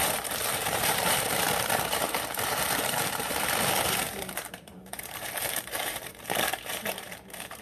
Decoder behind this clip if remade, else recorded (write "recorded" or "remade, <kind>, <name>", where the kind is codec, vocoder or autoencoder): remade, vocoder, BigVGAN v2